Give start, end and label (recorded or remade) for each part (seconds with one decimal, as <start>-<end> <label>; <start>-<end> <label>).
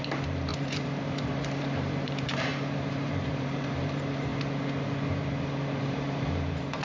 0.0-4.3 remade; 4.3-5.8 recorded; 5.8-6.8 remade